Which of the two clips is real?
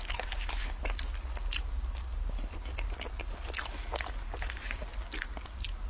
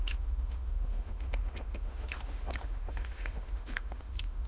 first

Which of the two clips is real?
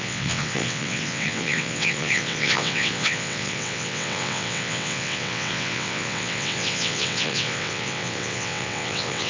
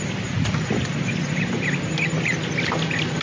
second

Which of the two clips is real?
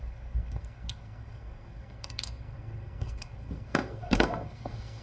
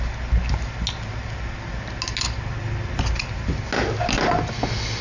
second